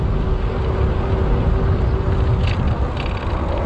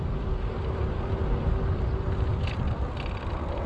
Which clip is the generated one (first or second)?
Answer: second